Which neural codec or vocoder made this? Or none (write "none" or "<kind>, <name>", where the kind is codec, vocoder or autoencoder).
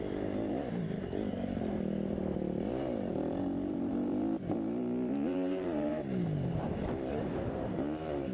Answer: vocoder, BigVGAN v2